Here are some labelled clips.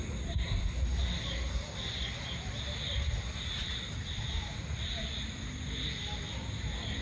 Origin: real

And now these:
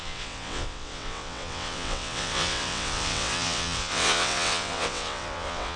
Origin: fake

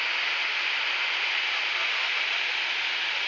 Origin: real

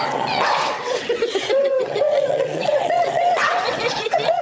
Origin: fake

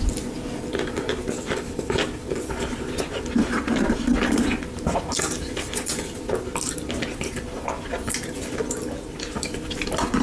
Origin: real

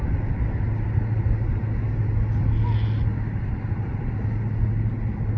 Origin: real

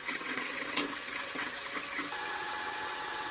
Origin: fake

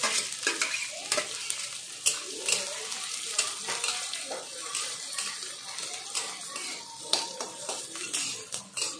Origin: real